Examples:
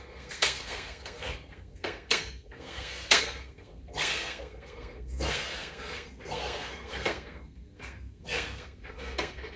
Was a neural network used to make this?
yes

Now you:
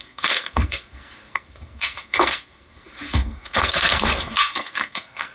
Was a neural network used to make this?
yes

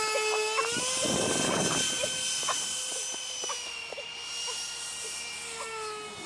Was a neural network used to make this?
no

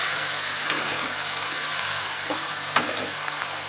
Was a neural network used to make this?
yes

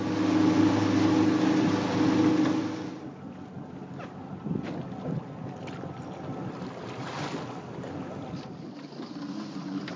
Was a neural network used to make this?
no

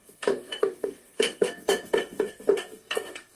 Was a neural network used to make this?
yes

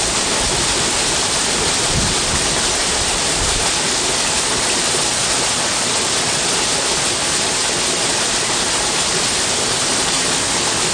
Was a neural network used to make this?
no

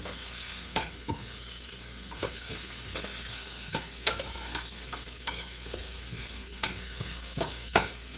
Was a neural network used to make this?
yes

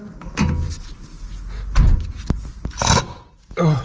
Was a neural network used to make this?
no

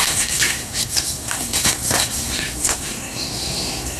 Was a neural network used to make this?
yes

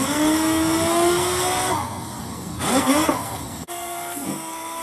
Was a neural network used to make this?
yes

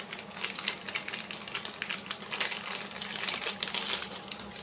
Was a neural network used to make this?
no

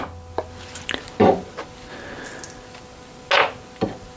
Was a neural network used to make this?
no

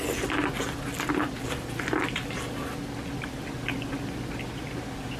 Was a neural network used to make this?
no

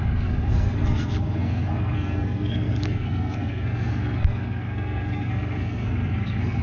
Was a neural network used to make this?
yes